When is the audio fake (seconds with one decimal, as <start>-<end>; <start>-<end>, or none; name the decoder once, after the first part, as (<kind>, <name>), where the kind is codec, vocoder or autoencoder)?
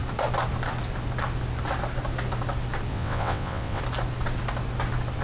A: 2.9-3.8 (vocoder, WaveNeXt)